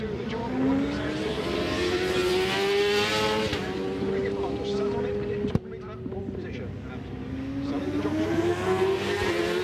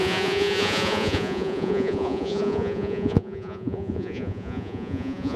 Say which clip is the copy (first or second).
second